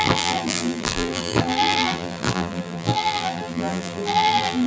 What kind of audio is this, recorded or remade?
remade